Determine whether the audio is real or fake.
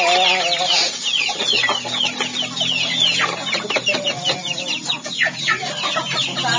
real